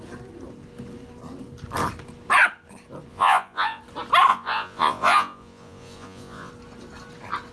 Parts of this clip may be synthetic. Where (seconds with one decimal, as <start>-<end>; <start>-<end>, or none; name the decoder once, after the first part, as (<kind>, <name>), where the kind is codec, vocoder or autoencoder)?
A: 3.1-3.8 (vocoder, Vocos); 4.3-6.5